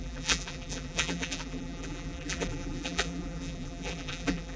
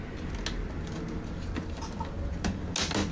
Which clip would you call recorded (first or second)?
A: second